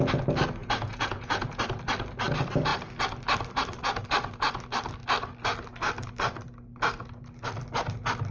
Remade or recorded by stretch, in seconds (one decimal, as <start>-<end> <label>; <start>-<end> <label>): 0.0-0.6 recorded; 0.6-1.6 remade; 1.6-8.3 recorded